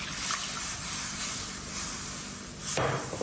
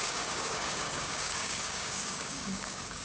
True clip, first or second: first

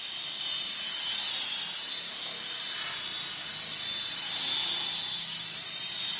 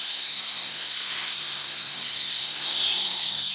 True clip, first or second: first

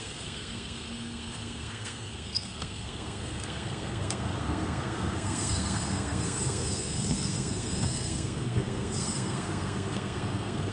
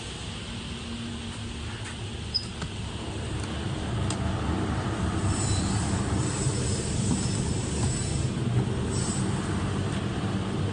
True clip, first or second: second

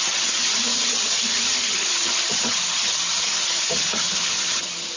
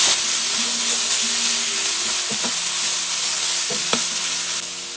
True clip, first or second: second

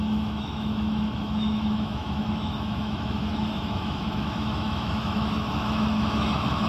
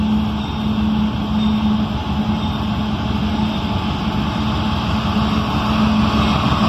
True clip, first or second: second